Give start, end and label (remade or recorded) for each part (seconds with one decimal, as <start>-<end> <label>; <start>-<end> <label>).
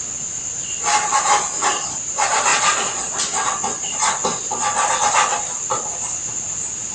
0.0-2.5 recorded; 2.5-3.1 remade; 3.1-6.9 recorded